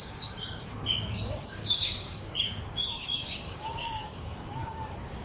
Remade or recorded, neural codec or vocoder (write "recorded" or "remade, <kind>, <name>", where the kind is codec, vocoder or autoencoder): remade, codec, DAC